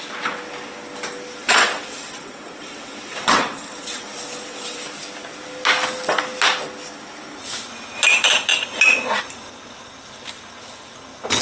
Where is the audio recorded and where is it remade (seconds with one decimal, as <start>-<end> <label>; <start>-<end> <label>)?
0.0-1.4 recorded; 1.4-4.8 remade; 4.8-11.4 recorded